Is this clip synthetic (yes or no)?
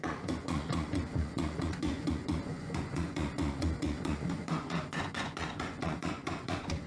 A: yes